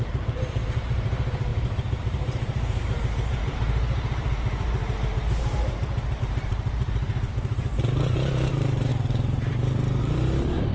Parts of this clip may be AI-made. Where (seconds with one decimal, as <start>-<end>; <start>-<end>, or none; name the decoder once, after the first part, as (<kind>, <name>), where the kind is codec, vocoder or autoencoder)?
0.0-8.9 (vocoder, BigVGAN v2); 10.0-10.7